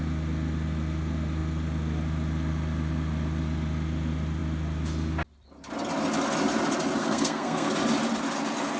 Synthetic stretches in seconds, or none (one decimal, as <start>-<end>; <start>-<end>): 7.0-7.7